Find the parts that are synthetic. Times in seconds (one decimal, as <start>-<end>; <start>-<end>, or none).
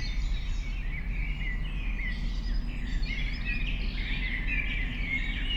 0.0-1.2; 4.6-5.6